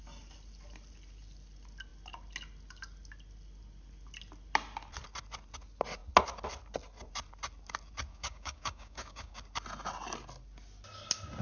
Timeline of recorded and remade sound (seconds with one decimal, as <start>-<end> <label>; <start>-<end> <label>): 0.0-8.1 recorded; 8.1-9.4 remade; 9.4-11.4 recorded